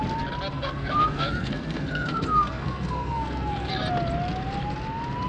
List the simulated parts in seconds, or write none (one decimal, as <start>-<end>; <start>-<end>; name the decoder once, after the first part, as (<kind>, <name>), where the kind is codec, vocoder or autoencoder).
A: 0.5-3.7 (codec, SNAC)